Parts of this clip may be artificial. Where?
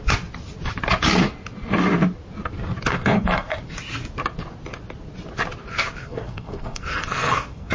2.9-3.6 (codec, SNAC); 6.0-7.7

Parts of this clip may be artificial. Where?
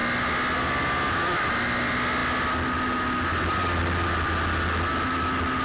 none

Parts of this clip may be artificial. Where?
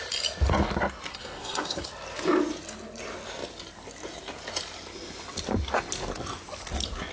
1.1-1.9 (codec, SNAC)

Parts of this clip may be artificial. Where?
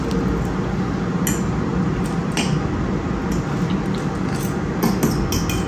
none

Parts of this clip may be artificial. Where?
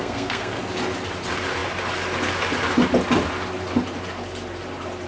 0.0-0.6 (codec, SNAC)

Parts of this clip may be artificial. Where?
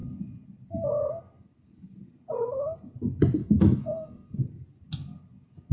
3.4-4.4 (codec, SNAC)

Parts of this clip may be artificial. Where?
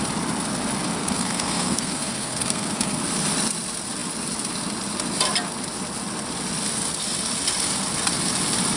1.0-3.0 (codec, SNAC)